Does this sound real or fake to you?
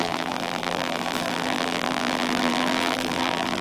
fake